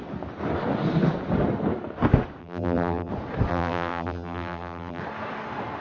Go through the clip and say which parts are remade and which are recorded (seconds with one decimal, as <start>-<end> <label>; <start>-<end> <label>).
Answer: 0.0-2.4 recorded; 2.4-3.1 remade; 3.1-3.5 recorded; 3.5-5.0 remade; 5.0-5.8 recorded